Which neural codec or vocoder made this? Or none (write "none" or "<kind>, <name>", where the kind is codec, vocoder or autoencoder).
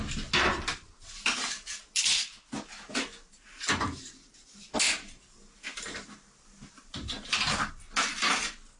none